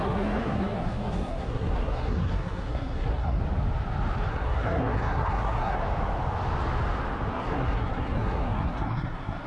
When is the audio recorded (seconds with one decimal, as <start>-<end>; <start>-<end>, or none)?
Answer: 3.4-4.3; 5.8-7.3